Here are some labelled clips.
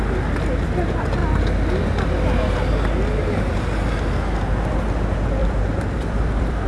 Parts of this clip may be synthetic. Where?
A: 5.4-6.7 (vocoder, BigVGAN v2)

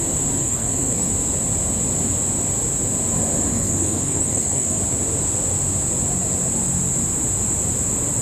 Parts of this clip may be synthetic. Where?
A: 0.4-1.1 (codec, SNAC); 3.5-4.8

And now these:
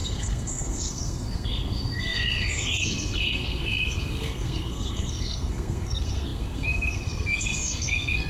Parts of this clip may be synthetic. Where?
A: 0.0-8.3 (codec, SNAC)